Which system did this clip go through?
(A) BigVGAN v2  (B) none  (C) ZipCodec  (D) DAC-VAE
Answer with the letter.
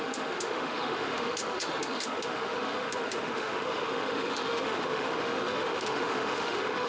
D